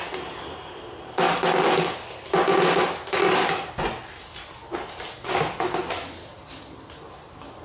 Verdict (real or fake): real